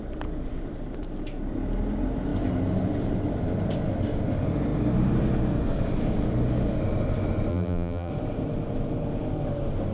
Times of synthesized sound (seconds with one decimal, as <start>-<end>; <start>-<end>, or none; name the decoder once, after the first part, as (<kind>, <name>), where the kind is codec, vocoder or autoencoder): 7.5-8.1 (vocoder, BigVGAN v2)

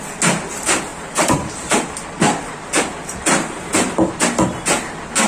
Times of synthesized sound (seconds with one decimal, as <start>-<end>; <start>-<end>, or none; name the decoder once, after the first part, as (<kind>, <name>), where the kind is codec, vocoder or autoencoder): 0.9-4.1 (vocoder, BigVGAN v2)

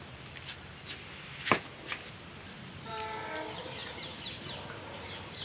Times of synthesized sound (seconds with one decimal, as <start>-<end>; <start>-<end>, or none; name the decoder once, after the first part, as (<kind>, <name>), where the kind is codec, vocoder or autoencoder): none

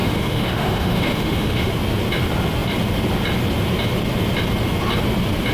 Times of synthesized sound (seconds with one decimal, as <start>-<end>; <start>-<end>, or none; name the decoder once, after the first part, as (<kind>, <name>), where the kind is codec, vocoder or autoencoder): 0.0-1.7 (autoencoder, DAC-VAE)